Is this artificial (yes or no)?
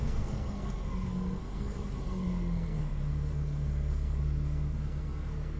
yes